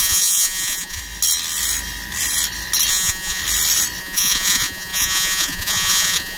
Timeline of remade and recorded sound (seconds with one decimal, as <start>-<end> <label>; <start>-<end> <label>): 0.0-1.0 remade; 1.0-2.9 recorded; 2.9-3.4 remade; 3.4-4.0 recorded; 4.0-6.4 remade